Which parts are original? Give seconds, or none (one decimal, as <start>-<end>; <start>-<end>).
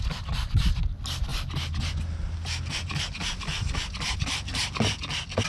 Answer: 0.0-5.5